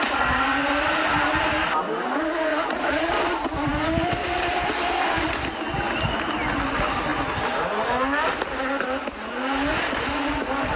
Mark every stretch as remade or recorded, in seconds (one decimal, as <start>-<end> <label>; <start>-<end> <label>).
0.0-2.5 recorded; 2.5-3.1 remade; 3.1-10.8 recorded